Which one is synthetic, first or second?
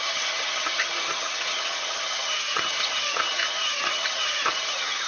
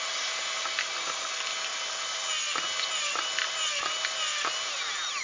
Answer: first